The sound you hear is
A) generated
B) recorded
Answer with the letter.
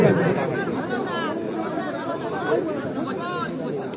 B